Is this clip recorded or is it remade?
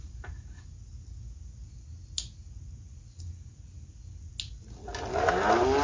recorded